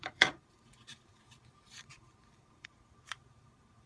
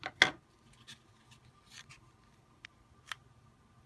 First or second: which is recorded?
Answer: second